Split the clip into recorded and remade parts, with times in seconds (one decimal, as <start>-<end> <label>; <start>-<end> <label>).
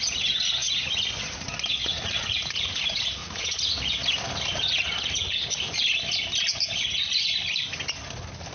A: 0.0-1.8 recorded; 1.8-2.8 remade; 2.8-3.2 recorded; 3.2-3.8 remade; 3.8-8.5 recorded